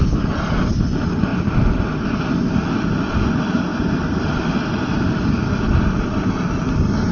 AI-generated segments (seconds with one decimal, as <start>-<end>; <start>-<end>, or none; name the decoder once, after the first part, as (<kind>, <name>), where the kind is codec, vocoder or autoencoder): none